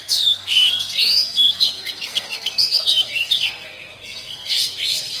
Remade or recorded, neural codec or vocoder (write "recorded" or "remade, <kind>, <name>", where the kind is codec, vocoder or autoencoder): remade, codec, SNAC